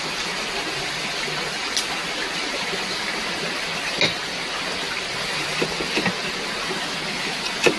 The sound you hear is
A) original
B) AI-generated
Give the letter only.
A